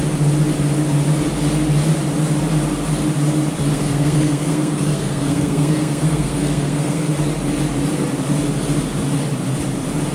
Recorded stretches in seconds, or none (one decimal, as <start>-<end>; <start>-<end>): 0.0-3.7; 7.1-10.1